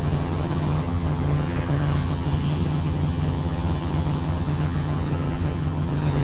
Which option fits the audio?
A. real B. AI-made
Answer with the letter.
B